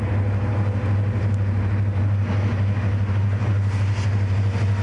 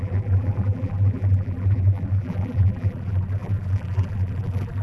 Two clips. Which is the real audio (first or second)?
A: first